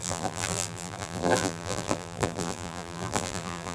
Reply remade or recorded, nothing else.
remade